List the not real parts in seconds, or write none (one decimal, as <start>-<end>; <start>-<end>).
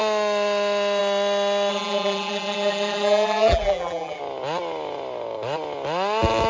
1.7-4.2